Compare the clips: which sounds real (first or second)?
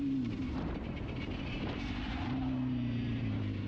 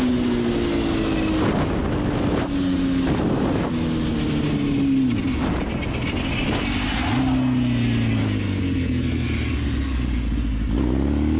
second